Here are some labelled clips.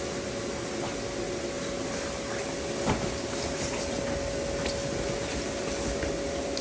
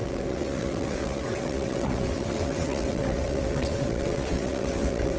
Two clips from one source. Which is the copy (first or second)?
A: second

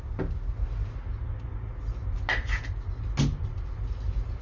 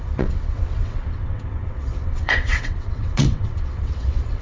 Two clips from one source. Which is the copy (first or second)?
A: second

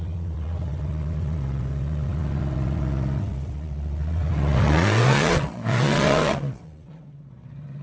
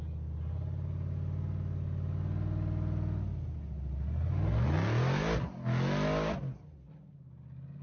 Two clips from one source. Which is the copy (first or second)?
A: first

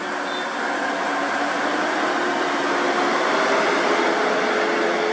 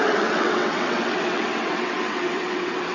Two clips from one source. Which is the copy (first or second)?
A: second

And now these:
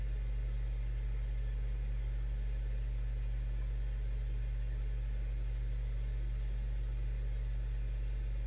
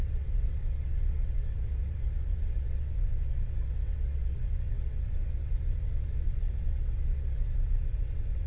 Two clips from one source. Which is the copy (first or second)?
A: second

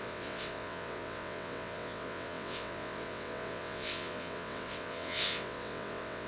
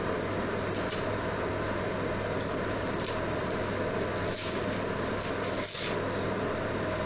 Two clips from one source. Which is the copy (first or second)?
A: first